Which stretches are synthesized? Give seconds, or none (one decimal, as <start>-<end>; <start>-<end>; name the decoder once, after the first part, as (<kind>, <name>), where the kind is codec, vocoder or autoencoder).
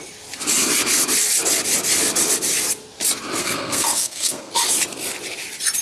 3.4-4.5 (codec, SNAC)